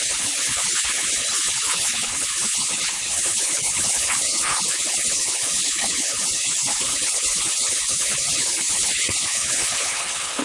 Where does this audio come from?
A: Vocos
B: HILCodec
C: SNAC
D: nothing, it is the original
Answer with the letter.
B